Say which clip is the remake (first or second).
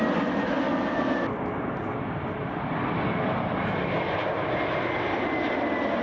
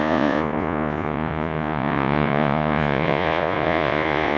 second